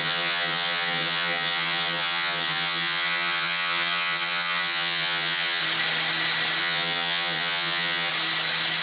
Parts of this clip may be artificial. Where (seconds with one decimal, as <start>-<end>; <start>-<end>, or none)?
0.0-5.6; 6.6-8.1